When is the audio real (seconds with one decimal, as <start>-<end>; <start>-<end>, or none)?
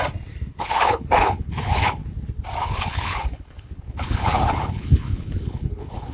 0.0-0.6; 2.0-2.6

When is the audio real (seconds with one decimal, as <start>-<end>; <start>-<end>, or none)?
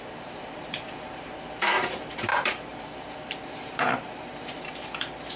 none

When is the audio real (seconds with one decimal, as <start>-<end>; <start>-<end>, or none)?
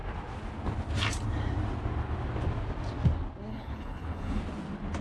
0.0-3.5; 4.4-5.0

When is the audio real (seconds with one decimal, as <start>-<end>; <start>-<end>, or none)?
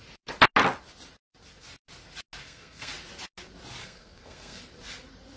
0.0-2.4; 2.9-3.8; 4.6-5.4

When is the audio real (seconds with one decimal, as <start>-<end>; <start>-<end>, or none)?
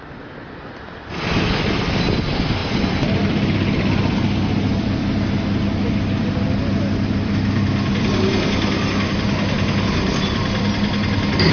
0.0-11.5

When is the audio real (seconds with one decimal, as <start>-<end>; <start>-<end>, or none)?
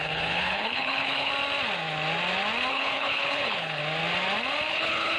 1.3-2.7; 3.8-4.7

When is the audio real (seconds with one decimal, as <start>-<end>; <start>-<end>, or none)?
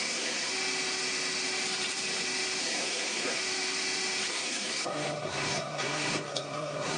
0.5-2.6; 3.4-4.3